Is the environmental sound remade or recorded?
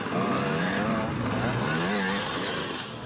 recorded